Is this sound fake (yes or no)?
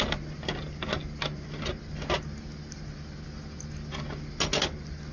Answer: no